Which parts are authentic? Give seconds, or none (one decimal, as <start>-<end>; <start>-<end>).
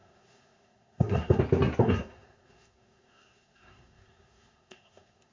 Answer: 1.4-1.8